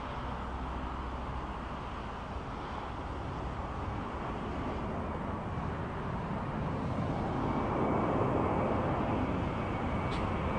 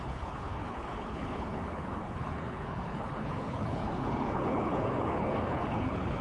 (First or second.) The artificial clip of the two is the second